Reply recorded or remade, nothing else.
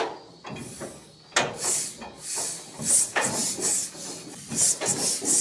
recorded